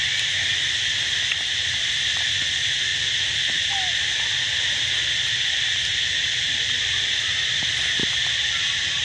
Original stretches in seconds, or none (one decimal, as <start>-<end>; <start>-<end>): 0.0-9.0